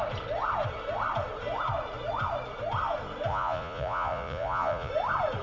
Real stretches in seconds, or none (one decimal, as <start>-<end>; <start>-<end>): 0.0-3.3; 4.9-5.4